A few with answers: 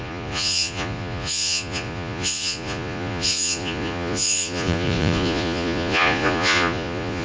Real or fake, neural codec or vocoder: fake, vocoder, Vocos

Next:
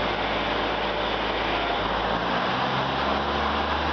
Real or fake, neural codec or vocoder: real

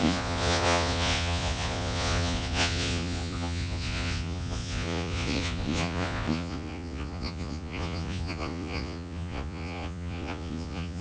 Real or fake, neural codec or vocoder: fake, vocoder, Vocos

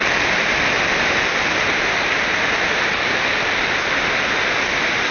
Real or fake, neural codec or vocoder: real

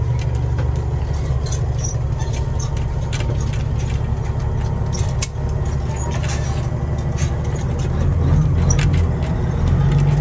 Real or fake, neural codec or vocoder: real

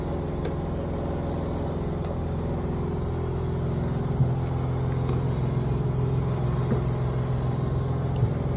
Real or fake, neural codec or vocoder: real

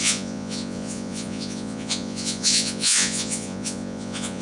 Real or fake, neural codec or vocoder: fake, vocoder, Vocos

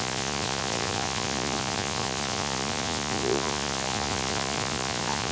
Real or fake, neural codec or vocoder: fake, vocoder, Vocos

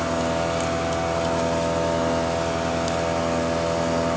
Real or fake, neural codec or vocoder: real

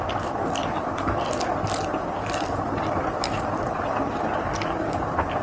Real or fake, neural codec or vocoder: real